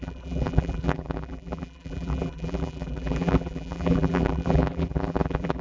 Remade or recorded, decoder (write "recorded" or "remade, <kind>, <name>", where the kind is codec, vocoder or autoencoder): remade, vocoder, BigVGAN v2